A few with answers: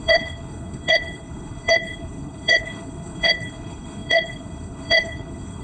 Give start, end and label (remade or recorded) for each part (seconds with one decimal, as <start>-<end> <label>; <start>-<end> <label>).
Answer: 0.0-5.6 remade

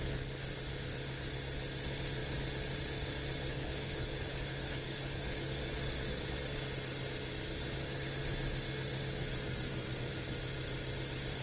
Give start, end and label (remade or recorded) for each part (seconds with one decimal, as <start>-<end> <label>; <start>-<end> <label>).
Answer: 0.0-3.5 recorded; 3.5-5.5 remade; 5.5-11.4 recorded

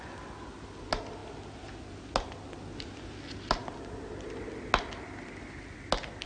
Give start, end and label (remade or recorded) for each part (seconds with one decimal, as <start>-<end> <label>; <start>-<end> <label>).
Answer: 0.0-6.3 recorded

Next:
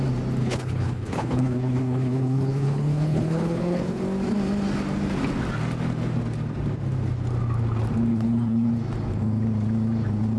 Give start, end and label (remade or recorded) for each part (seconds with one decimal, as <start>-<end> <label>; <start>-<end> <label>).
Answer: 0.0-0.4 recorded; 0.4-4.0 remade; 4.0-8.1 recorded; 8.1-8.7 remade; 8.7-10.4 recorded

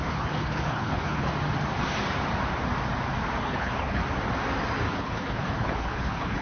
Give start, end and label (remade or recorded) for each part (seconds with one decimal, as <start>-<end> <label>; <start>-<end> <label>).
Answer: 0.0-1.3 remade; 1.3-3.4 recorded; 3.4-4.0 remade; 4.0-5.0 recorded; 5.0-6.4 remade